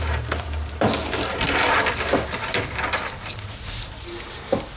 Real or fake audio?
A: real